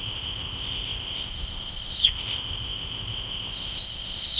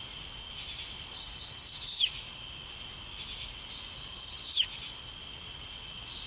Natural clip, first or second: second